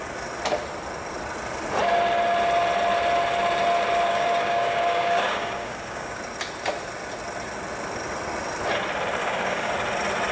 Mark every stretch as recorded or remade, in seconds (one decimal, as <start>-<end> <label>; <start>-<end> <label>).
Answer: 0.0-4.1 recorded; 4.1-6.2 remade; 6.2-9.2 recorded; 9.2-9.7 remade; 9.7-10.3 recorded